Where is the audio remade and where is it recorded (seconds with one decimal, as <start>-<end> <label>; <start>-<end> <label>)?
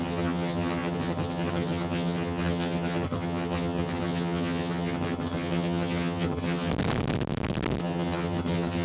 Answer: 0.0-6.7 remade; 6.7-7.8 recorded; 7.8-8.8 remade